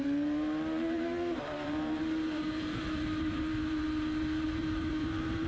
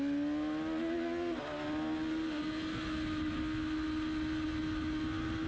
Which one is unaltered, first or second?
second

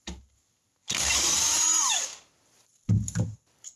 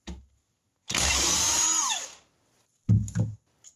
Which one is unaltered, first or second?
second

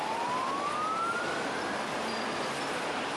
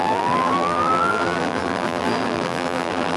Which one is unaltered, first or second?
first